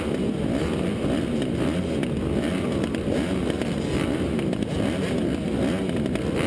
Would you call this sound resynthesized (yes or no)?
no